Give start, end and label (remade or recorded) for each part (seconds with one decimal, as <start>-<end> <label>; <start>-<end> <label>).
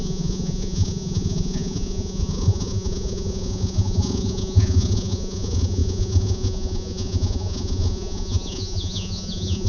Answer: 0.0-9.7 remade